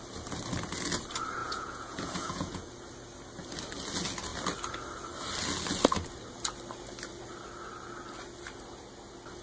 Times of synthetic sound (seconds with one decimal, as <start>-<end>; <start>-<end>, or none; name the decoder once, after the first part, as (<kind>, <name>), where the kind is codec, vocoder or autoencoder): 1.4-2.7 (vocoder, Vocos)